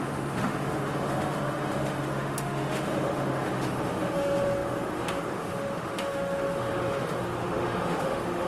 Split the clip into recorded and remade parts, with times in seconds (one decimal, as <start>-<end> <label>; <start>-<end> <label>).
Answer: 0.0-8.5 remade